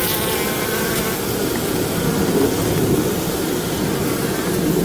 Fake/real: real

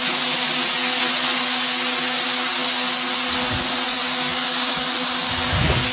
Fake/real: real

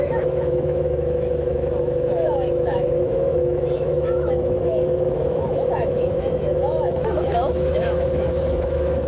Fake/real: fake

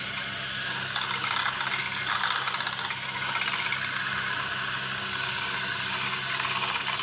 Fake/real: real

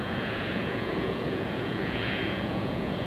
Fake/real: fake